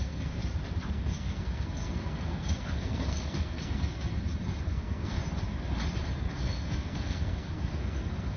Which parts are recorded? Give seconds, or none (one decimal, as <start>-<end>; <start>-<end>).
0.4-0.9; 4.1-4.6; 5.2-6.2